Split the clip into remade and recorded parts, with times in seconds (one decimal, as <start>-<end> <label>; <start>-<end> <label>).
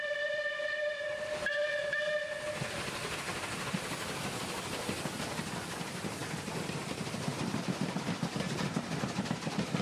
0.0-6.2 remade; 6.2-7.4 recorded; 7.4-9.8 remade